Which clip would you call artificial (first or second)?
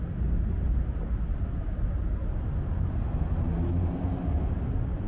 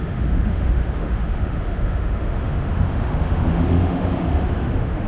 second